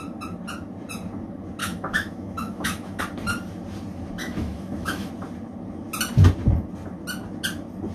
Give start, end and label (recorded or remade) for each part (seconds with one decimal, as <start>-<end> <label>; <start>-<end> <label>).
0.0-1.6 recorded; 1.6-3.0 remade; 3.0-4.2 recorded; 4.2-5.1 remade; 5.1-7.9 recorded